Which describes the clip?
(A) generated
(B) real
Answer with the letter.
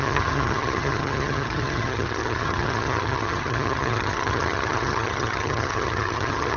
A